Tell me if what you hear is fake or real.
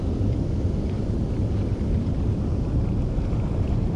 real